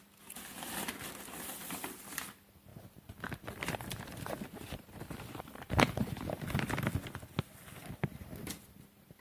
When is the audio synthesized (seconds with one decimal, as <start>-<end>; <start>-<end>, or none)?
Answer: none